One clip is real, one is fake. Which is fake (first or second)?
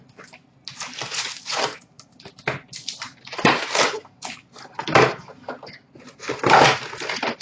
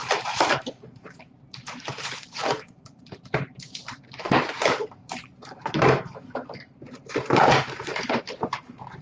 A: second